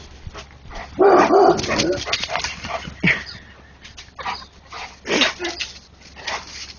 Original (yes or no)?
yes